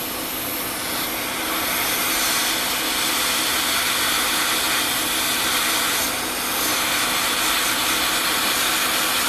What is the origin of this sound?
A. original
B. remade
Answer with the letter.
A